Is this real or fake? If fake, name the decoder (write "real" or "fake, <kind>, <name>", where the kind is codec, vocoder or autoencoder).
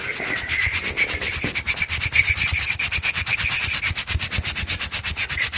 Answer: real